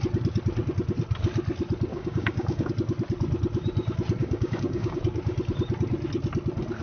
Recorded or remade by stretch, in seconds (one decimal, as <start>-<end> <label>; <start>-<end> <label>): 0.0-1.9 recorded; 1.9-2.7 remade; 2.7-4.2 recorded; 4.2-5.0 remade; 5.0-6.8 recorded